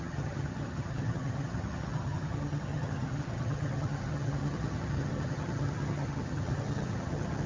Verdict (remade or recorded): remade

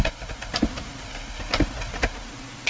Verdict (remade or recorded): recorded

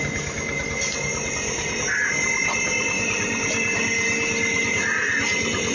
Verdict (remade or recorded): recorded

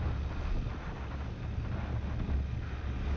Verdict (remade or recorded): recorded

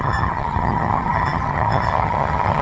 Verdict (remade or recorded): remade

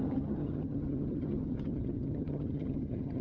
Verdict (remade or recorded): remade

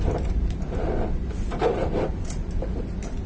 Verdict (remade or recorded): recorded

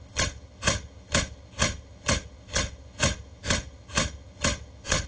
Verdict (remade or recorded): remade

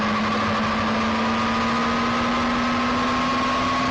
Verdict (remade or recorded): recorded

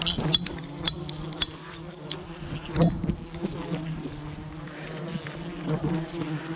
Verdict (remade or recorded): recorded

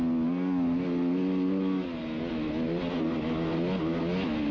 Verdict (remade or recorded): recorded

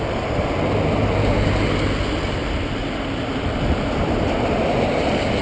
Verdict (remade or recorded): recorded